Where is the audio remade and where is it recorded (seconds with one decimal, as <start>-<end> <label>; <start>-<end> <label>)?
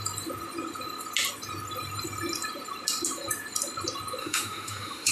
0.0-4.2 recorded; 4.2-5.1 remade